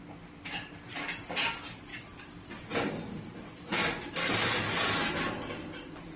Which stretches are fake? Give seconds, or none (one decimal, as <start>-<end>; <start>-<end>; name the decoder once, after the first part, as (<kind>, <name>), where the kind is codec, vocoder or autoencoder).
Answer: 3.8-4.6 (vocoder, BigVGAN v2)